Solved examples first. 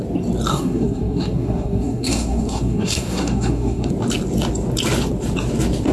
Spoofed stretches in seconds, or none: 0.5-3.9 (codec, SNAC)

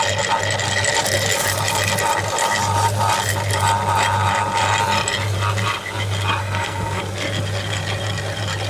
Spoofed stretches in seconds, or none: 6.4-7.0 (codec, SNAC)

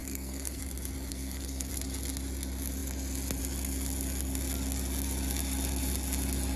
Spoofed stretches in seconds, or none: 0.0-0.6 (codec, SNAC); 1.1-1.7